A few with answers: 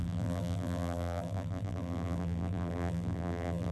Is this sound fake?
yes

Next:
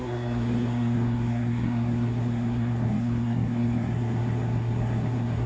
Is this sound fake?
yes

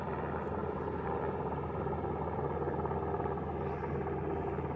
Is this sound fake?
yes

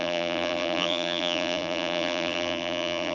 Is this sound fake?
yes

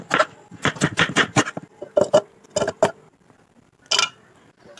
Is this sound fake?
no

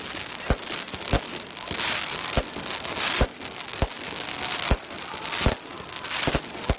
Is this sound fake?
no